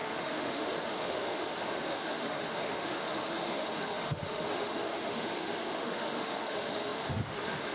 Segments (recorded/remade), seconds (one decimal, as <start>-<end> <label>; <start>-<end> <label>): 0.0-7.7 remade